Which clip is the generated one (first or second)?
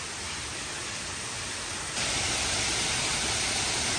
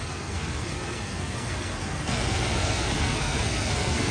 second